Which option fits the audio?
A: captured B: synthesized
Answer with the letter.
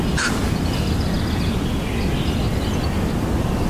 A